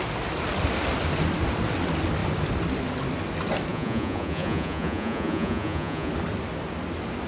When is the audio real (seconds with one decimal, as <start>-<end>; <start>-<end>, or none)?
0.0-3.7; 6.1-7.3

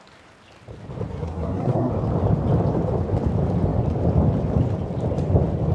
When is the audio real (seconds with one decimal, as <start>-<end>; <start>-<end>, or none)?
0.0-1.1; 1.9-5.7

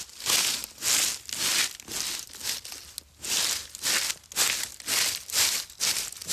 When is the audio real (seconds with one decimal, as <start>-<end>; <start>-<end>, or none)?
0.0-6.3

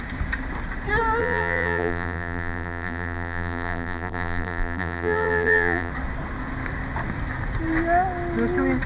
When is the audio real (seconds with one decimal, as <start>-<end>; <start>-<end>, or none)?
0.0-1.2; 5.9-8.9

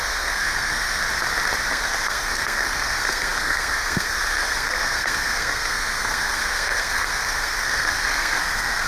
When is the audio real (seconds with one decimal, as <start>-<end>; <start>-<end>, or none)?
1.0-1.7

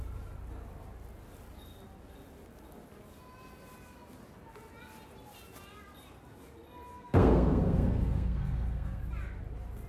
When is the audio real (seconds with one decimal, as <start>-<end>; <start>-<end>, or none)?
0.0-6.9; 9.0-9.9

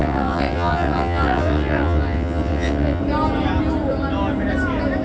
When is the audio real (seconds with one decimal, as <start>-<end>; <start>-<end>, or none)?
3.0-5.0